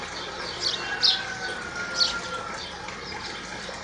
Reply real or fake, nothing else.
real